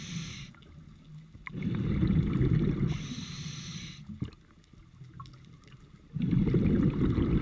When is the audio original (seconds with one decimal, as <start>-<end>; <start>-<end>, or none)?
0.0-7.4